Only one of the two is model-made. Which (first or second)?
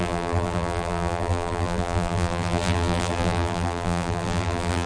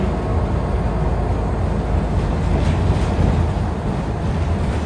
first